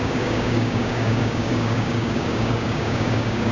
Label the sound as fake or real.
fake